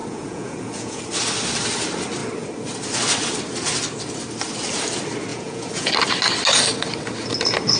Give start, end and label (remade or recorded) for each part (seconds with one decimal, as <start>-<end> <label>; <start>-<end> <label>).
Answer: 0.0-1.0 remade; 1.0-5.3 recorded; 5.3-5.9 remade; 5.9-7.8 recorded